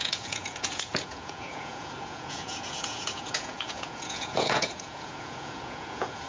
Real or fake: fake